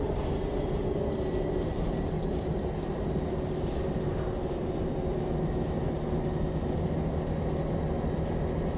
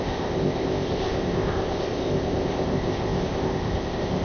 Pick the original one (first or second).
first